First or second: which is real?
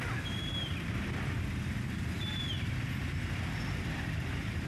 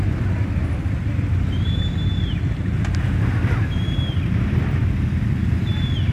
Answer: second